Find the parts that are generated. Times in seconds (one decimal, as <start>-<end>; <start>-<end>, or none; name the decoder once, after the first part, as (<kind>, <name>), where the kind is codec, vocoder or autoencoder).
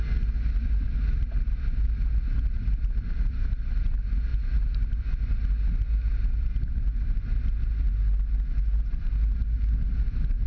none